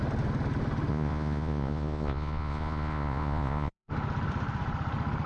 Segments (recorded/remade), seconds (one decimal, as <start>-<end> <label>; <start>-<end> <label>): 0.0-0.9 recorded; 0.9-3.9 remade; 3.9-5.3 recorded